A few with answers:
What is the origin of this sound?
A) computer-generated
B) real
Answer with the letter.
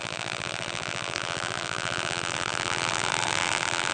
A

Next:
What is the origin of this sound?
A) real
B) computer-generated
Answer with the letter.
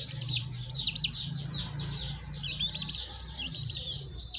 B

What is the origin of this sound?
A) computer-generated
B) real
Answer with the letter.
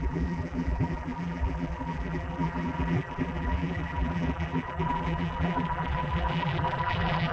A